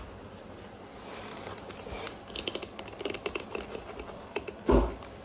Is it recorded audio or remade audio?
recorded